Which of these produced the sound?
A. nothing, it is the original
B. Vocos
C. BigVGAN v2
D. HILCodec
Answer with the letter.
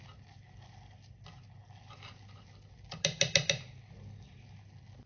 A